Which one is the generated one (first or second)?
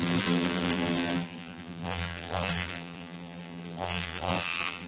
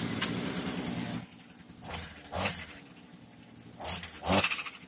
first